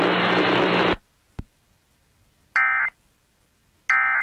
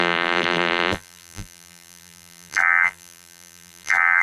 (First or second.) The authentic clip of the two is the first